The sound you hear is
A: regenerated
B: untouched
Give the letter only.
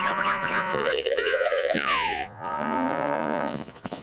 A